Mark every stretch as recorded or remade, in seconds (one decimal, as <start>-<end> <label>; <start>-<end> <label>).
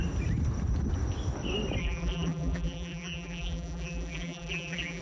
0.0-1.8 recorded; 1.8-5.0 remade